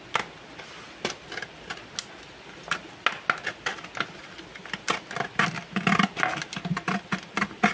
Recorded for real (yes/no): yes